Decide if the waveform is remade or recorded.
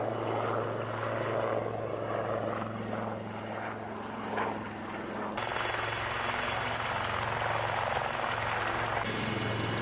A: recorded